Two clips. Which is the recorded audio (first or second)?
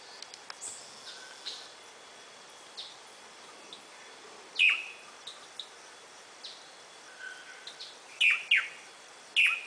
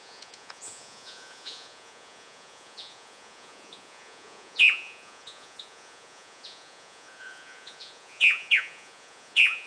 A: first